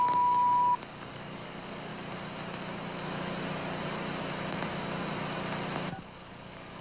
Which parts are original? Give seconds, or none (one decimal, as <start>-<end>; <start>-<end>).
1.9-6.0